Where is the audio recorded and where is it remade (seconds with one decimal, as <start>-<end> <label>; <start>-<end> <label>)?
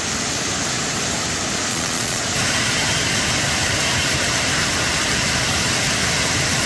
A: 0.0-1.7 recorded; 1.7-2.2 remade; 2.2-6.7 recorded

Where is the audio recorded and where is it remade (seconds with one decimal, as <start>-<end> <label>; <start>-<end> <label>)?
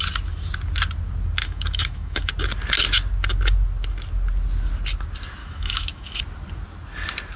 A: 0.0-1.4 recorded; 1.4-2.3 remade; 2.3-5.4 recorded; 5.4-6.2 remade; 6.2-7.4 recorded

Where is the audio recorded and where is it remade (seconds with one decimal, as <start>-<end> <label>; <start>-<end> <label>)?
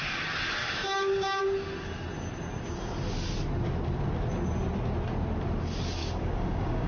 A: 0.0-0.6 recorded; 0.6-1.4 remade; 1.4-6.0 recorded; 6.0-6.9 remade